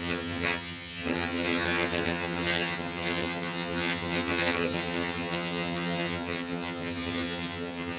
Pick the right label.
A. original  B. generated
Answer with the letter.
B